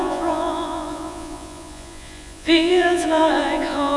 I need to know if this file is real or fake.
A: fake